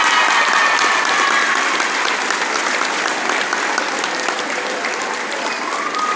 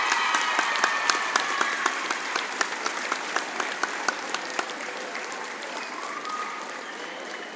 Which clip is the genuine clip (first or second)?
first